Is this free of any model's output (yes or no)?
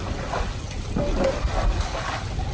yes